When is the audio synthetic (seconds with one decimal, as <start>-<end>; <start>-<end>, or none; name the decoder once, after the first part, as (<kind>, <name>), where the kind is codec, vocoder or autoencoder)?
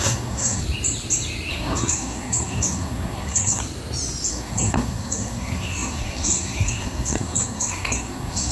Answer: 0.0-0.6 (codec, SNAC); 1.5-3.6; 4.3-8.5